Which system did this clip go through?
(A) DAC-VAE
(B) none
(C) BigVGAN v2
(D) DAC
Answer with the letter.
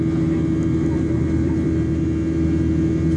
B